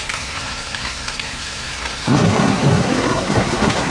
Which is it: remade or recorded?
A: remade